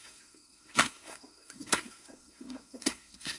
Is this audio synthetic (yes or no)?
yes